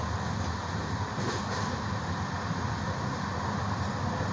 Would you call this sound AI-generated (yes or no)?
no